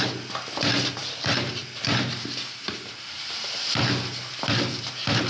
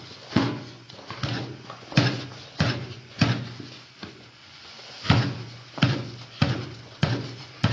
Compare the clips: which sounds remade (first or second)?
second